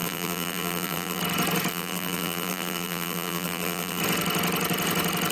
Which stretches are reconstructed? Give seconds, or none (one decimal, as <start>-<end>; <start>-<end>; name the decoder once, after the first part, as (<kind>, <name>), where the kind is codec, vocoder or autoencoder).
0.0-1.2 (vocoder, BigVGAN v2); 1.7-4.0